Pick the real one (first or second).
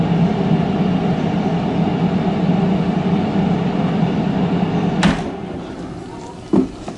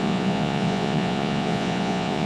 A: first